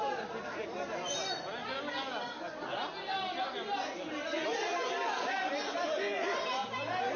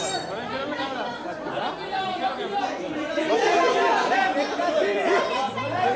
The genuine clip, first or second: first